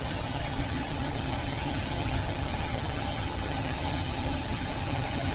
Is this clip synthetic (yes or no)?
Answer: yes